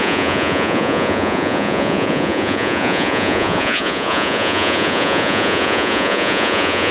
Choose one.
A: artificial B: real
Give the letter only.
A